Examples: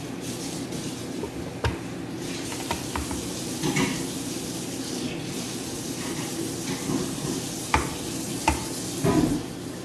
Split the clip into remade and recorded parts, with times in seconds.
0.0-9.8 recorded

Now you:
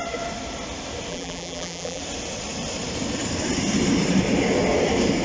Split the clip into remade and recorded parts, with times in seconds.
0.0-1.1 recorded; 1.1-2.0 remade; 2.0-5.2 recorded

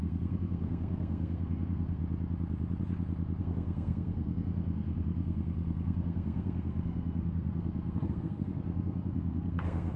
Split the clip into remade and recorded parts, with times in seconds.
0.0-2.0 remade; 2.0-3.4 recorded; 3.4-10.0 remade

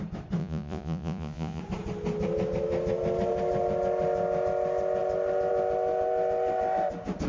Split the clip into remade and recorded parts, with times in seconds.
0.0-0.4 recorded; 0.4-1.6 remade; 1.6-7.3 recorded

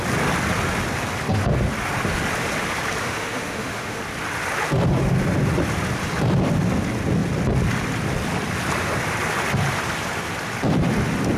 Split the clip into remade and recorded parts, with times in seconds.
0.0-3.0 recorded; 3.0-4.0 remade; 4.0-11.4 recorded